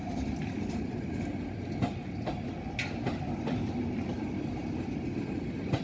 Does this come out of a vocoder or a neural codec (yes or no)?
no